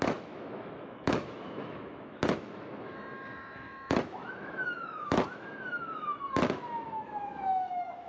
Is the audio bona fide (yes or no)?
no